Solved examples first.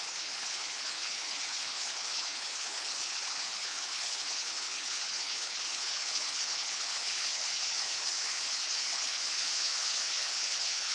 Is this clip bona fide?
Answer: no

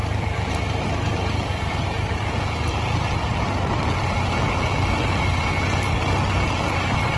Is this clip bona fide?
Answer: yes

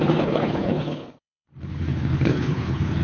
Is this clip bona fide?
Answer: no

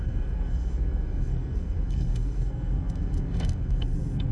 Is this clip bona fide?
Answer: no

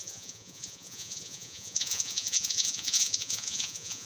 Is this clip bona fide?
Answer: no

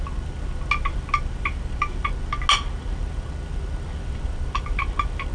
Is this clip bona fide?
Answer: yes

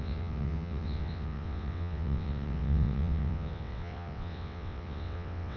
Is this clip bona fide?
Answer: no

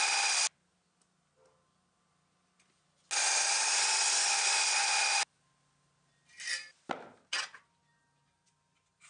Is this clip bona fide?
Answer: yes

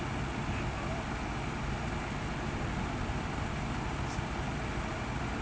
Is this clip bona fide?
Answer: yes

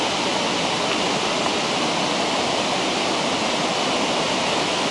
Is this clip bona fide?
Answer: yes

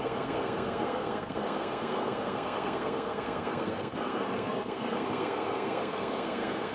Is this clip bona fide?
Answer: no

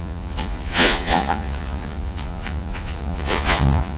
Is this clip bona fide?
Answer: no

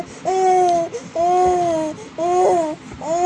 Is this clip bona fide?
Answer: yes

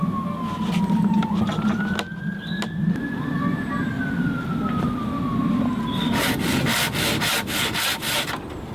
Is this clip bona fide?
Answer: yes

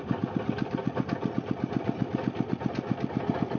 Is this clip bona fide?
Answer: yes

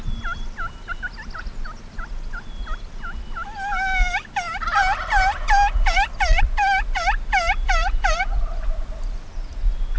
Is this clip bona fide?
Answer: yes